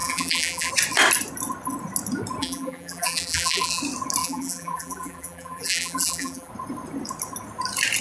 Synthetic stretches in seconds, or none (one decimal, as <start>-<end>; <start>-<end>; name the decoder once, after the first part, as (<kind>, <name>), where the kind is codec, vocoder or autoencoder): 0.0-0.7 (vocoder, BigVGAN v2); 2.4-3.8; 4.2-6.5